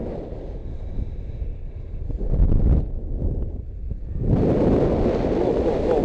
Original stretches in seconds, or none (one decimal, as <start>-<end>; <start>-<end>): 0.0-6.0